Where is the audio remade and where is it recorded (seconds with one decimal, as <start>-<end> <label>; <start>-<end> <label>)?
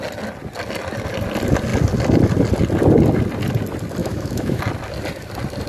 0.0-4.0 recorded; 4.0-4.6 remade; 4.6-5.7 recorded